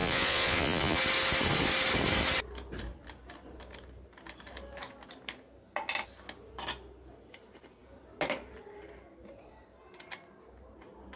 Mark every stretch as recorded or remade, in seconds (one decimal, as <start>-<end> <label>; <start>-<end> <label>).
0.0-1.0 remade; 1.0-11.2 recorded